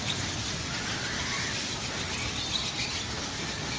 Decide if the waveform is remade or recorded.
recorded